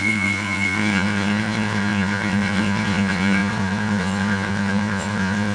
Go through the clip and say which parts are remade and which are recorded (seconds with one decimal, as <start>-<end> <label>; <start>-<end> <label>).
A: 0.0-5.5 remade